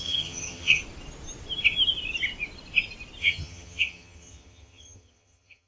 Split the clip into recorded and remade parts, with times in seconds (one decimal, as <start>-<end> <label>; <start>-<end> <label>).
0.0-0.8 remade; 0.8-3.2 recorded; 3.2-5.7 remade